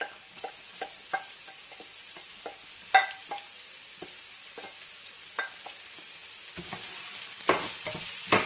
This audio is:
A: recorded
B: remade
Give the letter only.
A